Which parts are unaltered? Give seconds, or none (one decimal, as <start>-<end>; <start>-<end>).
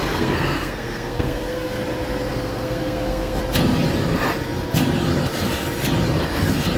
1.8-2.3; 3.4-6.8